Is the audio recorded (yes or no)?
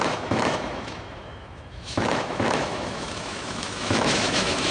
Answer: no